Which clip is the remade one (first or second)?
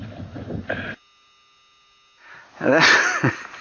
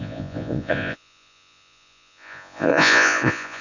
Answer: second